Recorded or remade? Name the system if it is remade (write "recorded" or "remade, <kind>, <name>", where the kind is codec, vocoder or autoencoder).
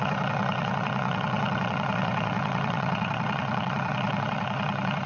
remade, vocoder, WaveNeXt